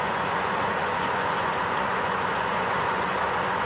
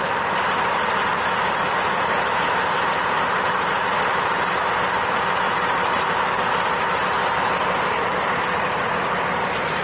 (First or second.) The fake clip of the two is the first